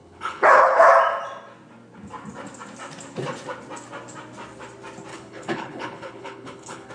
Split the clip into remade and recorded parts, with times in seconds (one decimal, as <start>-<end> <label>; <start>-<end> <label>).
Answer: 0.0-0.9 remade; 0.9-5.1 recorded; 5.1-6.9 remade